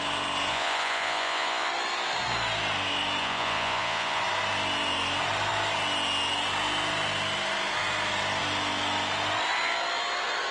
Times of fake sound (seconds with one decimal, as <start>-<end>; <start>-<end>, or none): 0.5-1.7; 3.2-4.2